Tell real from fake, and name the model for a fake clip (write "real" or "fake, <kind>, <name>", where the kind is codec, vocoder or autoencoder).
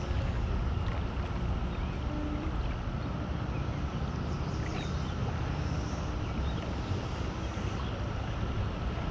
real